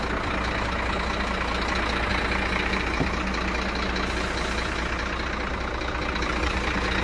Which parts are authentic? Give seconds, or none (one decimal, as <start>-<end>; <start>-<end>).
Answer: 0.0-7.0